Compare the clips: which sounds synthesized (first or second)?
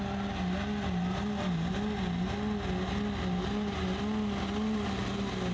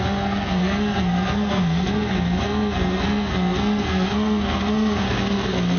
second